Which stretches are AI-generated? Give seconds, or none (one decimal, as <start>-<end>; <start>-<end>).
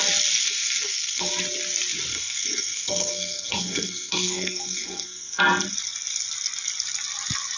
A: 0.4-1.3; 2.1-5.4